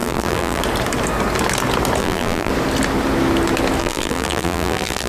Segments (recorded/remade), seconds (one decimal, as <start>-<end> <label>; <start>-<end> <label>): 0.0-0.6 remade; 0.6-2.0 recorded; 2.0-2.5 remade; 2.5-3.8 recorded; 3.8-5.1 remade